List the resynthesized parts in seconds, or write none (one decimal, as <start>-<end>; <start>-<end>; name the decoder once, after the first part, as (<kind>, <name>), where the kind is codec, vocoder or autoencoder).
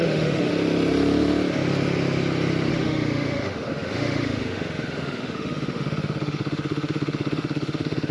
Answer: 0.0-0.5 (autoencoder, DAC-VAE); 2.7-8.1